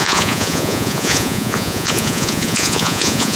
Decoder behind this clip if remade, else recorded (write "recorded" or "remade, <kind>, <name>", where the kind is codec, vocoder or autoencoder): remade, vocoder, Vocos